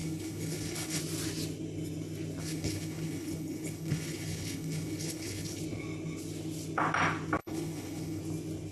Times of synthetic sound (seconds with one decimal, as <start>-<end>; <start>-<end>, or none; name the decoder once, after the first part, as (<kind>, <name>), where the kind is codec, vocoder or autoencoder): 0.0-1.0 (codec, HILCodec); 2.4-5.6; 7.4-8.2